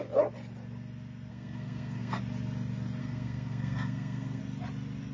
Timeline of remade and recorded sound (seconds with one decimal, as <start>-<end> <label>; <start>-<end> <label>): 0.0-1.3 recorded; 1.3-2.2 remade; 2.2-3.0 recorded; 3.0-4.4 remade; 4.4-5.1 recorded